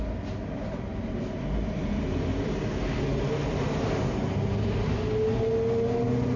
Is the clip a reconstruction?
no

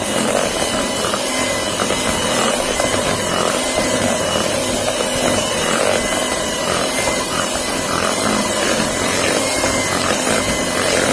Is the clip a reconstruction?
no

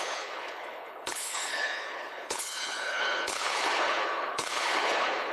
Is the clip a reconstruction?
yes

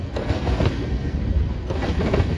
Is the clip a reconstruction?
yes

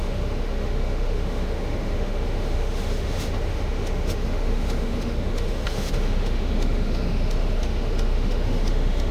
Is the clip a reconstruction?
yes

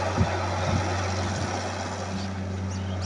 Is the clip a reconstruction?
no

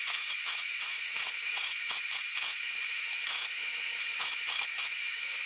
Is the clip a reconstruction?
yes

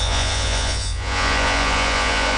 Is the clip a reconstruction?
yes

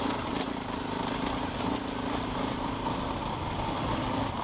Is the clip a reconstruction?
no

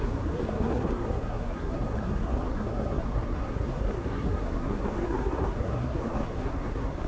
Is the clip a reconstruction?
yes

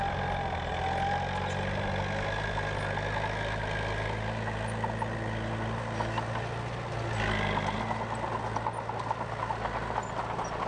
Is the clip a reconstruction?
no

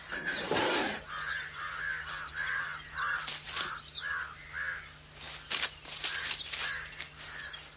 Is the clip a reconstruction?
no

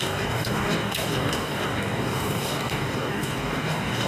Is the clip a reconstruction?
yes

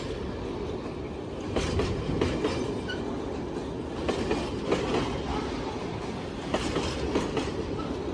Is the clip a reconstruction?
no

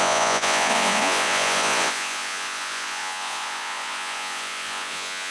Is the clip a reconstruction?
yes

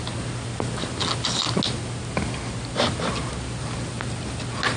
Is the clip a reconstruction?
no